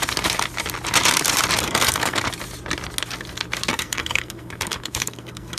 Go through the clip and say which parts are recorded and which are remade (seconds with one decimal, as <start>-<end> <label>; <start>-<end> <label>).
0.0-1.6 recorded; 1.6-2.2 remade; 2.2-3.7 recorded; 3.7-5.6 remade